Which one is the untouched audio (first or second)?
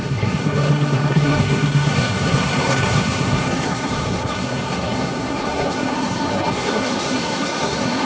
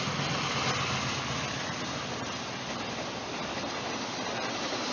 second